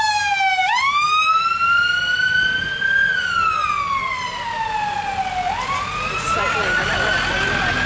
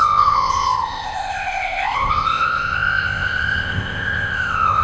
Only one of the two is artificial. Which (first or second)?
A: second